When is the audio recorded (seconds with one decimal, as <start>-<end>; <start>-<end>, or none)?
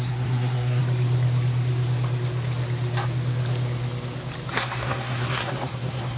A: 0.8-4.5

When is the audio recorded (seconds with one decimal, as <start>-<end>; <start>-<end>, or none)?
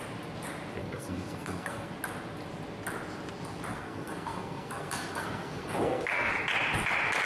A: 0.0-0.8; 1.9-3.7; 6.3-7.3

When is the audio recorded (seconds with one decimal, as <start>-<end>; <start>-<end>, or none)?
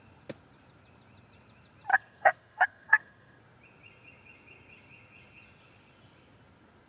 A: 0.0-1.9; 3.4-6.9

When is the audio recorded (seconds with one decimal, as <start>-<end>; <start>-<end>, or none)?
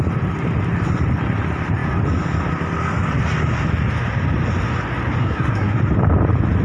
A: 0.0-5.2; 5.8-6.6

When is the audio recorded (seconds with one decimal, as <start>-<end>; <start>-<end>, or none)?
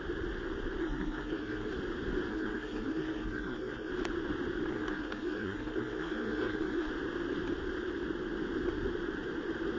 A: 0.0-0.8; 1.7-2.3; 3.9-4.7; 6.9-9.8